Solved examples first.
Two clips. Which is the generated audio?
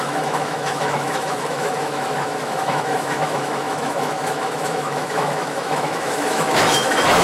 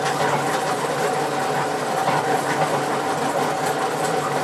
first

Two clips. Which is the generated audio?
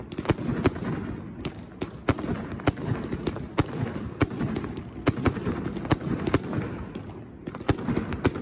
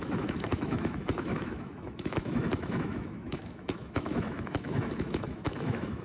second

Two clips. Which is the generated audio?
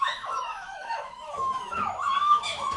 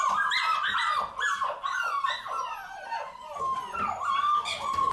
first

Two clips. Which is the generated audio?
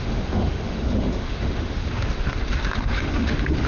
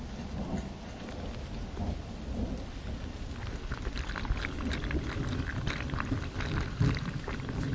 first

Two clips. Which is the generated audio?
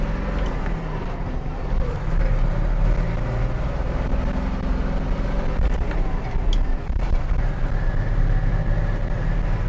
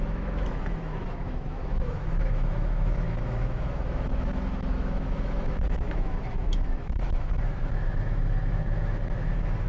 second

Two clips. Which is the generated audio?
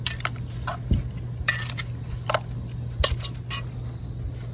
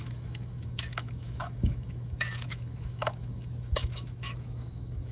second